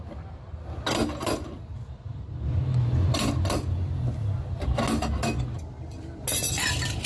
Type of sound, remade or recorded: recorded